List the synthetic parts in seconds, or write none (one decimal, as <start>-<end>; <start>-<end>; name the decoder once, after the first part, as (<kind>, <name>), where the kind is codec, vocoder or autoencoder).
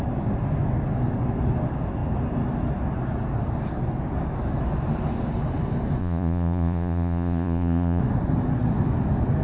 6.0-8.0 (vocoder, Vocos)